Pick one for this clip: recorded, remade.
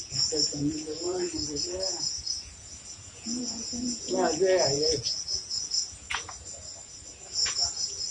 remade